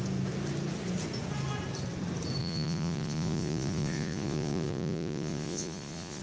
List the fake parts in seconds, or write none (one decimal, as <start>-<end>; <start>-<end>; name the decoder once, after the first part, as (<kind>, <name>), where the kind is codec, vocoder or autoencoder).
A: 2.4-6.2 (vocoder, Vocos)